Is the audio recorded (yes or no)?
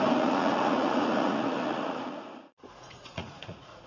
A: no